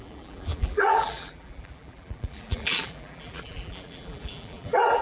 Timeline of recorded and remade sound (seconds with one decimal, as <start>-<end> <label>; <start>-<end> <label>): 0.0-5.0 remade